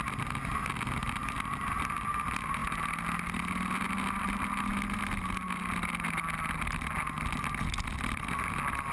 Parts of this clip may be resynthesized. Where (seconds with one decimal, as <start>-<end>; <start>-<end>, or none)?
none